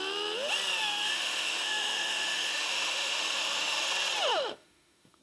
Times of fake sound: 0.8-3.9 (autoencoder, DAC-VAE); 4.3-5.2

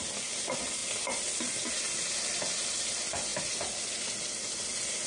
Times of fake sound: none

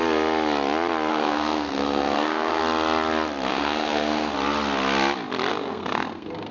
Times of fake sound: 1.1-2.6 (codec, SNAC); 3.5-4.3; 5.5-6.5